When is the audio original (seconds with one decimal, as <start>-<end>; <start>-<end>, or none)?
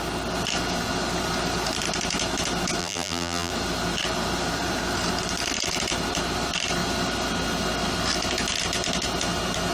0.0-2.8; 3.5-9.7